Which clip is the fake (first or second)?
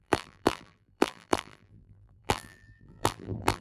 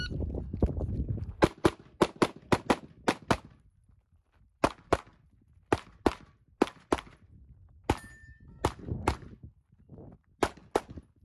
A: first